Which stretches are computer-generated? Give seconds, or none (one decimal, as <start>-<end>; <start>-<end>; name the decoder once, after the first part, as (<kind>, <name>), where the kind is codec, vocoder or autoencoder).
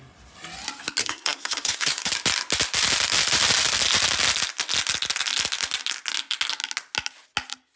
1.0-2.1 (codec, SNAC)